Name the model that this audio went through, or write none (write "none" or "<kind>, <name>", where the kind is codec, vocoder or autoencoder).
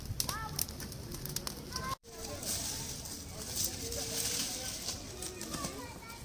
none